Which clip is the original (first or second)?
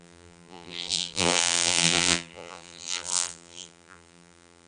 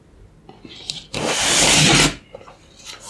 second